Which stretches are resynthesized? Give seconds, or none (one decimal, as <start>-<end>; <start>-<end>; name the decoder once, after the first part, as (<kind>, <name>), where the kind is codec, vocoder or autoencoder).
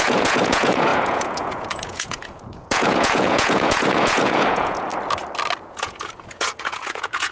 0.0-4.9 (vocoder, Vocos); 5.6-7.3